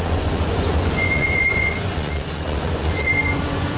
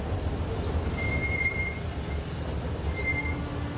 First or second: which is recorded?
second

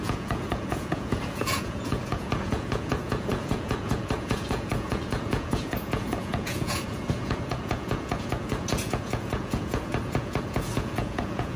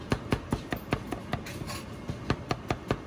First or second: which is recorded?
second